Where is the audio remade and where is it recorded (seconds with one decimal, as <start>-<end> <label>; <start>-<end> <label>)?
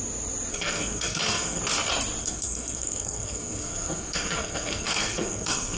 0.0-0.5 recorded; 0.5-1.6 remade; 1.6-2.2 recorded; 2.2-5.8 remade